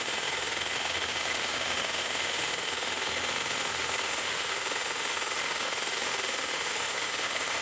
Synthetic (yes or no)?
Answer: yes